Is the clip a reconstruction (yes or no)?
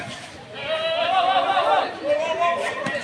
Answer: no